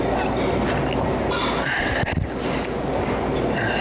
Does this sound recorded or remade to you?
recorded